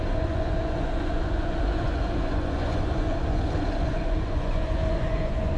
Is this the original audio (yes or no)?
no